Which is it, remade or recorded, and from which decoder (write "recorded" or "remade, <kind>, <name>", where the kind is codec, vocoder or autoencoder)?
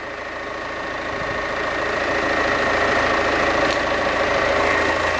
remade, vocoder, BigVGAN v2